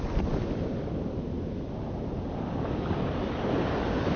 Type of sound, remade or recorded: remade